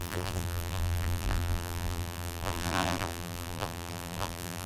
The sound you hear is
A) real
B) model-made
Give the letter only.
B